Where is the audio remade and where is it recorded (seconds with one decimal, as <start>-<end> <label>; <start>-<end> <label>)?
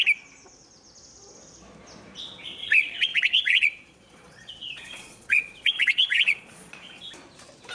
0.0-2.6 recorded; 2.6-7.0 remade; 7.0-7.7 recorded